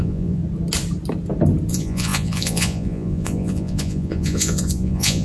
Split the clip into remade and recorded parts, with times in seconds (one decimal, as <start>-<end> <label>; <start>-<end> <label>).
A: 0.0-0.4 remade; 0.4-1.7 recorded; 1.7-5.2 remade